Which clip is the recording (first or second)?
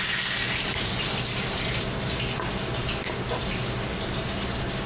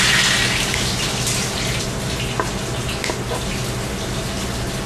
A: second